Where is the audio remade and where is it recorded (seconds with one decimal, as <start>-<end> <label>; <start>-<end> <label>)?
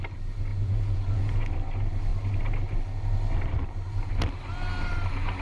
0.0-0.5 recorded; 0.5-1.4 remade; 1.4-5.4 recorded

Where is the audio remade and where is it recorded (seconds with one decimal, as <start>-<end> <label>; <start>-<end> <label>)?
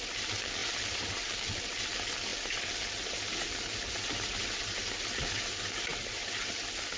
0.0-0.6 recorded; 0.6-1.3 remade; 1.3-5.9 recorded; 5.9-6.5 remade; 6.5-7.0 recorded